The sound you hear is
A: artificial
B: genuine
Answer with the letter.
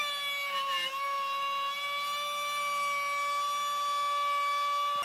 B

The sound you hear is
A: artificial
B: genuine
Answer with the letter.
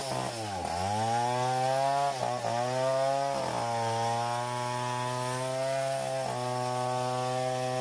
B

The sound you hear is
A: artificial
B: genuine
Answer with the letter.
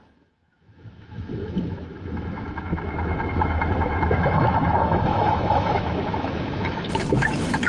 A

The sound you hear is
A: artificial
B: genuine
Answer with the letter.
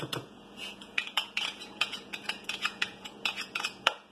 A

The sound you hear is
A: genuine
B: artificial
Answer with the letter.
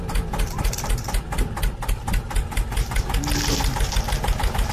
A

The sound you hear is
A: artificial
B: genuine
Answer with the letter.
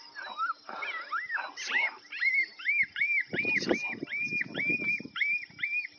B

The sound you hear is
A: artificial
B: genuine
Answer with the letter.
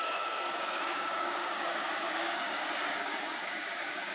A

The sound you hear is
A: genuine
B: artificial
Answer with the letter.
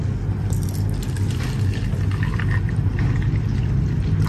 A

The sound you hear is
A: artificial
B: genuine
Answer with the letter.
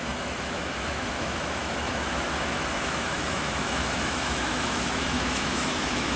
A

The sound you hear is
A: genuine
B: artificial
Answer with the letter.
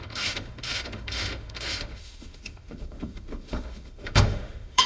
B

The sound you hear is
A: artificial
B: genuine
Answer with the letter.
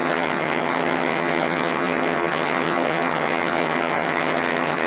A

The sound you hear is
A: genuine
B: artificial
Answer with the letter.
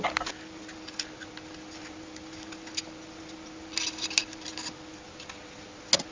A